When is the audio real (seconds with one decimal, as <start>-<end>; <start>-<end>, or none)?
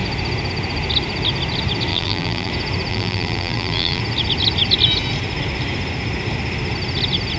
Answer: 0.0-1.9; 2.5-2.9; 4.0-7.4